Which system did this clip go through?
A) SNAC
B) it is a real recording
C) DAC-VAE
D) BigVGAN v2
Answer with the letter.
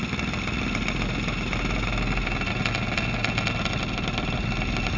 B